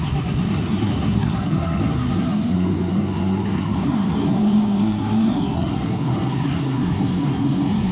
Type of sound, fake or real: fake